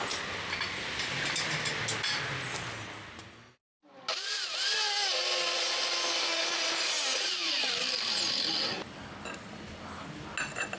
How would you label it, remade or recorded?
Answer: recorded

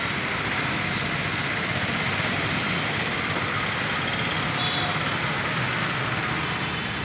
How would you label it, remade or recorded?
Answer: recorded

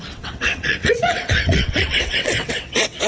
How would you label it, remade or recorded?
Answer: remade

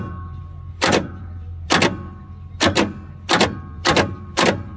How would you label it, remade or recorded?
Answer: remade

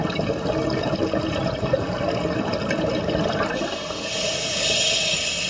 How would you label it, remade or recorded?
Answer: recorded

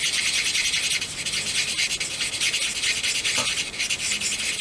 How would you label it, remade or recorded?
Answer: recorded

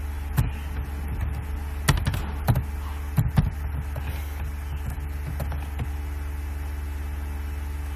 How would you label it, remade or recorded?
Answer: recorded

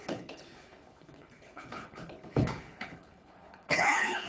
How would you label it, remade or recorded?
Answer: remade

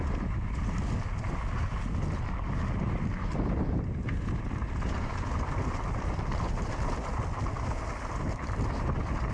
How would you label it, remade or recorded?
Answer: recorded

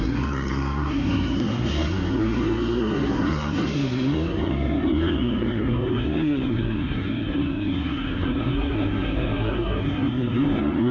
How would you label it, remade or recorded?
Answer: remade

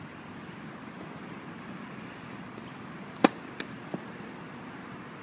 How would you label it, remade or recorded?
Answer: recorded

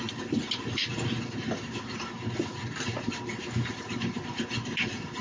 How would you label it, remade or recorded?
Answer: recorded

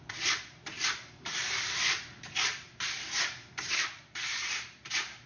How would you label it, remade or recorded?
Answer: remade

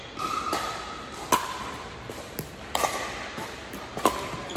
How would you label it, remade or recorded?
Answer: recorded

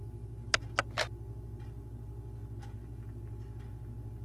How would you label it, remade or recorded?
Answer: recorded